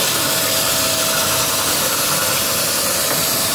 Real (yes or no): yes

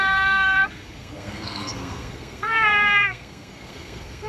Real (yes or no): no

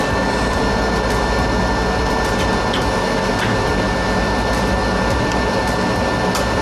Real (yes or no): yes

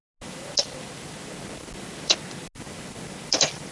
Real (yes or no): yes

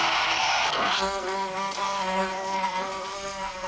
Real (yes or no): no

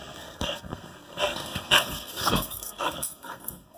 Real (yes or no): no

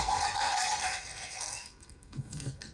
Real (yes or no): no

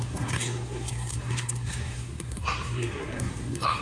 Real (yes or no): no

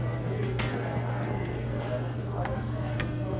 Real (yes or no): no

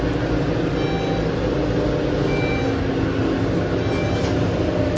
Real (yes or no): yes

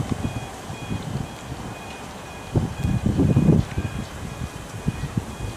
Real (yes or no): yes